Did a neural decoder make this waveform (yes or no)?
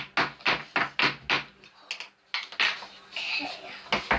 no